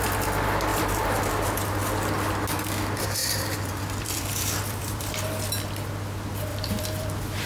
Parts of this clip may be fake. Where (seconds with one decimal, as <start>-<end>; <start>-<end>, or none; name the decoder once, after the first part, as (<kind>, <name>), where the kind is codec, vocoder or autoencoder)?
0.7-1.6 (vocoder, BigVGAN v2); 3.2-5.1; 6.5-7.5